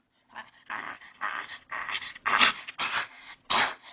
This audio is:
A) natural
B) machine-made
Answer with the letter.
A